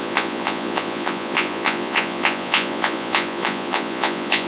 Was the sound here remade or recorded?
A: remade